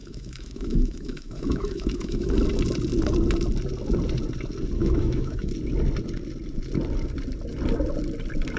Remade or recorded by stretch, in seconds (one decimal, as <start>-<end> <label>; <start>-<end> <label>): 0.0-2.3 remade; 2.3-4.8 recorded; 4.8-5.5 remade; 5.5-8.6 recorded